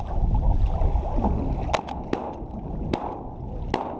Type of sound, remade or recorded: recorded